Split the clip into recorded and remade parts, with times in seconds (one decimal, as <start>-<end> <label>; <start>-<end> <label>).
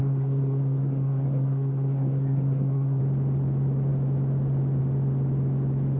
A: 0.0-3.0 remade; 3.0-6.0 recorded